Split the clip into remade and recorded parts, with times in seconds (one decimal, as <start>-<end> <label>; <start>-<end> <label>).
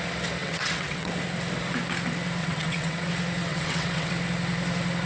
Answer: 0.0-0.4 recorded; 0.4-1.1 remade; 1.1-2.4 recorded; 2.4-3.1 remade; 3.1-3.5 recorded; 3.5-4.1 remade; 4.1-5.1 recorded